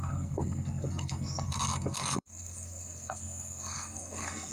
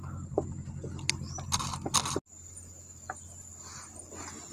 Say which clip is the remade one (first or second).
first